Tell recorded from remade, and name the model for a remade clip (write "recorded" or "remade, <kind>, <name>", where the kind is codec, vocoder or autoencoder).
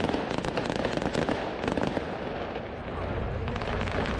recorded